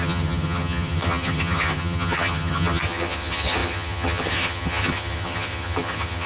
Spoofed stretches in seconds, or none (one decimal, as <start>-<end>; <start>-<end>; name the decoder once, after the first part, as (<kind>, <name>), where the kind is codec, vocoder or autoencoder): 0.0-6.3 (vocoder, HiFi-GAN)